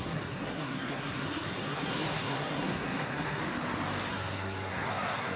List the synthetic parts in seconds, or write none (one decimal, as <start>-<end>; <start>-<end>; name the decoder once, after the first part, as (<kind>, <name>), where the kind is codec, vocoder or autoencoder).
0.0-3.4 (codec, SNAC); 4.1-5.4